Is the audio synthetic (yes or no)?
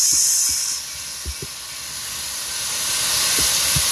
no